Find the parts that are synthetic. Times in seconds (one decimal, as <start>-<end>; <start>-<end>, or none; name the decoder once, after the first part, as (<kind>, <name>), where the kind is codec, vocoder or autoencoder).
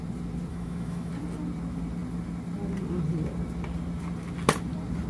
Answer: 0.5-1.1 (autoencoder, DAC-VAE)